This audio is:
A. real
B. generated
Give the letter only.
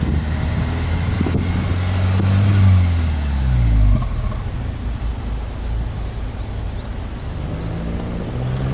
A